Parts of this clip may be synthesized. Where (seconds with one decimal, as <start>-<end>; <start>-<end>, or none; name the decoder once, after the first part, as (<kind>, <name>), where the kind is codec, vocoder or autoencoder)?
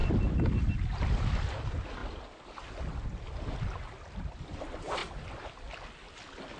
none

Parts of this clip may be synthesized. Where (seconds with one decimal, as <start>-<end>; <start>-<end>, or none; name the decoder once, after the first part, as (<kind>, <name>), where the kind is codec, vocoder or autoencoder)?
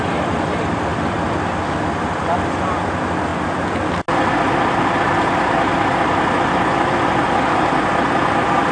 none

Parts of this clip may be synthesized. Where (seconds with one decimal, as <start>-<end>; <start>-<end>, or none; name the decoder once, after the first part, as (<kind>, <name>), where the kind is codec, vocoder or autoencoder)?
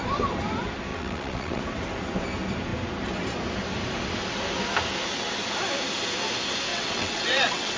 0.9-1.6 (vocoder, WaveNeXt); 6.7-7.8